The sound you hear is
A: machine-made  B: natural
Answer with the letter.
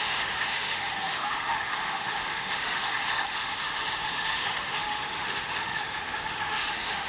A